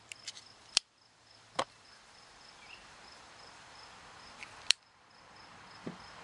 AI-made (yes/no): yes